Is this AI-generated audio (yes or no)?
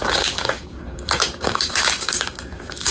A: yes